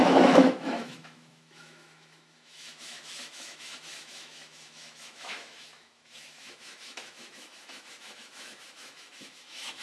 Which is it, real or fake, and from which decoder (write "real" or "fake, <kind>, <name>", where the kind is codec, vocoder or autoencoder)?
fake, autoencoder, DAC-VAE